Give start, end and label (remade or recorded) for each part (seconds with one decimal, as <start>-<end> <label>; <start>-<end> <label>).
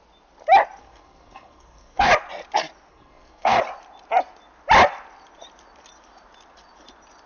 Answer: 0.0-0.8 recorded; 0.8-2.1 remade; 2.1-2.9 recorded; 2.9-3.6 remade; 3.6-7.3 recorded